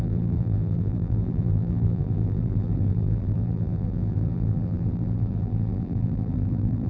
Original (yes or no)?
no